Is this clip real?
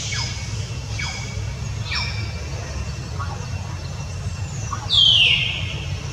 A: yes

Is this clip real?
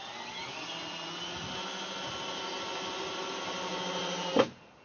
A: yes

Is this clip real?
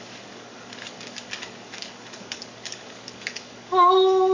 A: no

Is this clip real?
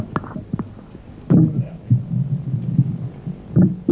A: yes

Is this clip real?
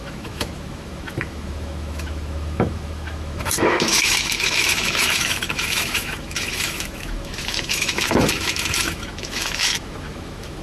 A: no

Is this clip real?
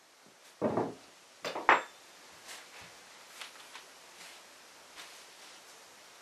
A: yes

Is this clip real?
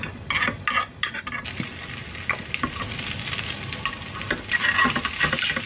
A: yes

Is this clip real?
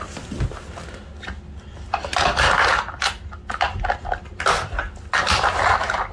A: yes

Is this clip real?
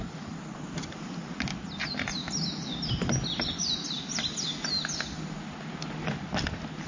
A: yes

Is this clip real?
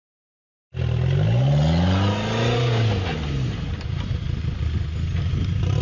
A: yes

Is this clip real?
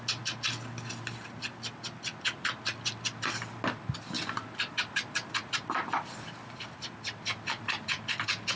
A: yes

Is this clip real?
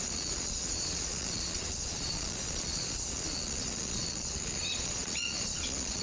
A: no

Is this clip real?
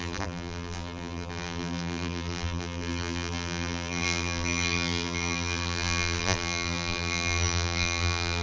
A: no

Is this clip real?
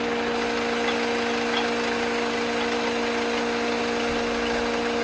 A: yes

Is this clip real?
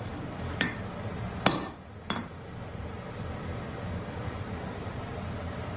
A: no